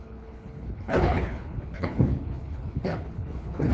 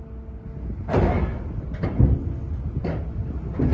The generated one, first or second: first